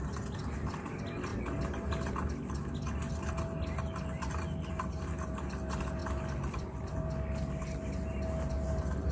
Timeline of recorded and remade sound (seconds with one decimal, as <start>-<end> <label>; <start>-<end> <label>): 0.0-9.1 recorded